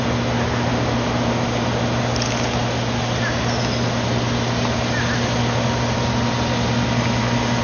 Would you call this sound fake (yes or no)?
no